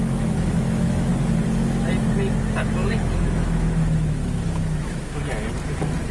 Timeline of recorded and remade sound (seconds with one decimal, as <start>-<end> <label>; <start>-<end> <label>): 0.0-1.1 remade; 1.1-2.8 recorded; 2.8-5.2 remade; 5.2-6.1 recorded